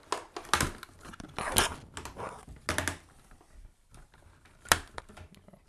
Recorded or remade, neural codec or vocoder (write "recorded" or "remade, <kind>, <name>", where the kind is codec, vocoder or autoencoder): recorded